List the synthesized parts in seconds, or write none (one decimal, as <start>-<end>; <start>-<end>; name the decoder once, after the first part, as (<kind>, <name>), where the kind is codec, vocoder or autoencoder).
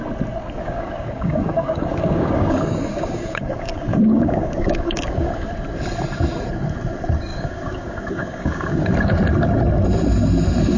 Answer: 0.4-5.5 (codec, DAC); 7.3-8.9